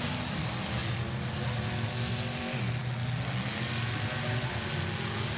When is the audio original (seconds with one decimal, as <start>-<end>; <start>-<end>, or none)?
0.0-5.4